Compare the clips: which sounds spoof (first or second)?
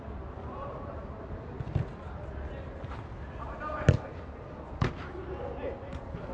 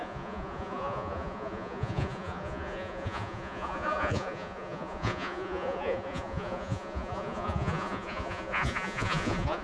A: second